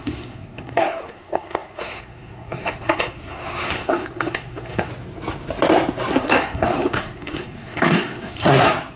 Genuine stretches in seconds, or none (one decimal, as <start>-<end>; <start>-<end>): 4.9-6.1